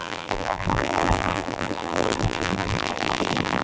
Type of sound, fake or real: fake